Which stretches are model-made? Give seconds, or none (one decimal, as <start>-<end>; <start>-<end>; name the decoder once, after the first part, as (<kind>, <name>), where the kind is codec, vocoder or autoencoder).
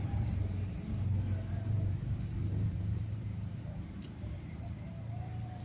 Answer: 1.5-4.9 (vocoder, BigVGAN v2)